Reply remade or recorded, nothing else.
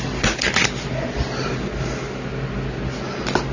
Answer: recorded